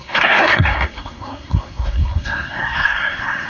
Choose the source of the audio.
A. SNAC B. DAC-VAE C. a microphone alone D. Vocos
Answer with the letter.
A